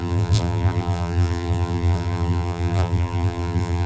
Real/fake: fake